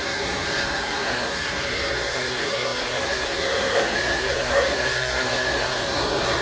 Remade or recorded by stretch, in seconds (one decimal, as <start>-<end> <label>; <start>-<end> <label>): 0.0-6.4 remade